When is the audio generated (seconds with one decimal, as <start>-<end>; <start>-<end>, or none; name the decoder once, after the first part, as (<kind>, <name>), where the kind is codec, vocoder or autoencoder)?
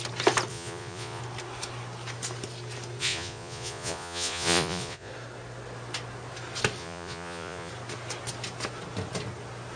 0.5-1.2 (vocoder, Vocos); 3.0-5.1; 6.8-7.7